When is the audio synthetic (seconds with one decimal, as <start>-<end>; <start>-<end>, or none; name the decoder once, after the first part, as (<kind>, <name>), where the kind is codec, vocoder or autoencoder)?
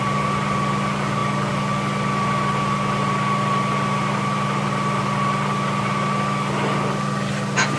none